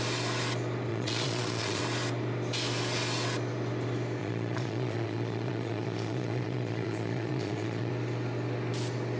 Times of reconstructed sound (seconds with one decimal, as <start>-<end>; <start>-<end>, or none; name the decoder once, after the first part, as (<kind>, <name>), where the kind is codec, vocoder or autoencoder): 0.9-1.8 (vocoder, Vocos); 4.2-7.9